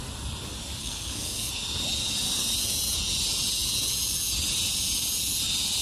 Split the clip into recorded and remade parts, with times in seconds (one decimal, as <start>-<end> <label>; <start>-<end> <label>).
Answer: 0.0-0.8 recorded; 0.8-1.5 remade; 1.5-5.8 recorded